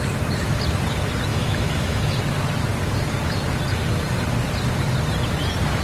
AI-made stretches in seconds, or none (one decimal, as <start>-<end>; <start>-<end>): 1.3-2.2